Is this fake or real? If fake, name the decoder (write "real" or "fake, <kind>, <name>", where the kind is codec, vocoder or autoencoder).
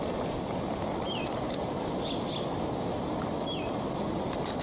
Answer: real